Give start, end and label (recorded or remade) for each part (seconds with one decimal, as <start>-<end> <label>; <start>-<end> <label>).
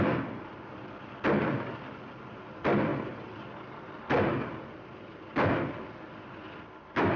0.0-7.2 recorded